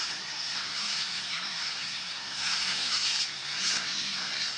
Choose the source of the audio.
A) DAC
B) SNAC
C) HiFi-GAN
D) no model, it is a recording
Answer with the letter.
B